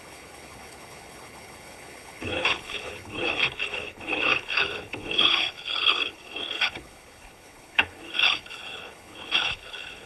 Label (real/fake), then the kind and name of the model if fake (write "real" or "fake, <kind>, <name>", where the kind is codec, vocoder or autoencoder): fake, codec, HILCodec